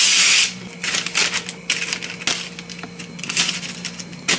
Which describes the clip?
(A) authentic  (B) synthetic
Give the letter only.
A